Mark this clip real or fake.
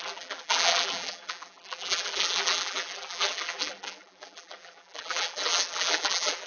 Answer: fake